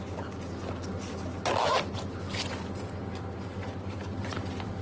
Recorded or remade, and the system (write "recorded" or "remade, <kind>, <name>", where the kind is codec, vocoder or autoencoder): recorded